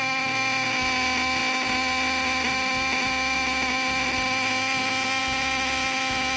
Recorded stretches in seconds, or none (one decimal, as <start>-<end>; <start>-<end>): 0.0-6.4